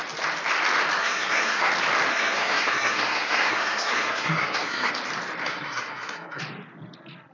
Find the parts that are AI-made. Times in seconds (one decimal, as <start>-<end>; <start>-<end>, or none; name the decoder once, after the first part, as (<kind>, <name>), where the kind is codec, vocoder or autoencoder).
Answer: 1.0-1.7 (codec, SNAC); 2.1-4.9; 5.4-6.4